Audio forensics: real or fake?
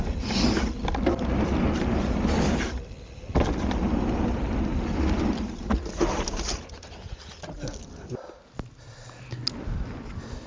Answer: real